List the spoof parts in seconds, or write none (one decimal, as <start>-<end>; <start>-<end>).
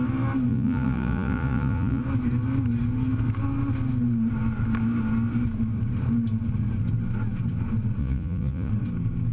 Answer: 0.5-2.0; 8.0-8.7